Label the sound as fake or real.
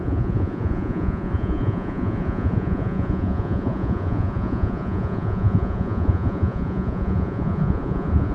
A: fake